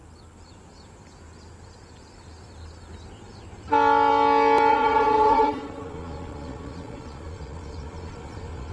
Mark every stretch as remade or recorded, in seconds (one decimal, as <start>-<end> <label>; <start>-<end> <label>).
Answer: 0.0-4.7 recorded; 4.7-8.7 remade